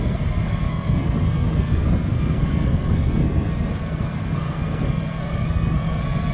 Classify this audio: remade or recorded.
remade